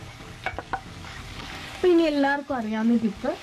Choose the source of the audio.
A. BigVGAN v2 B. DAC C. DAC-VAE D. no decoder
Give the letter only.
B